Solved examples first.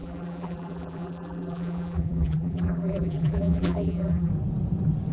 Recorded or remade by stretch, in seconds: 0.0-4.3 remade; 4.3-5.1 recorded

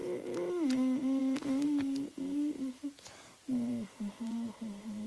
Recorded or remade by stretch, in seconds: 0.0-1.2 recorded; 1.2-5.1 remade